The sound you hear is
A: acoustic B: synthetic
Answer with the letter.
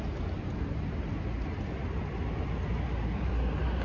A